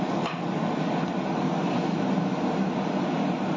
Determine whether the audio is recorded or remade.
recorded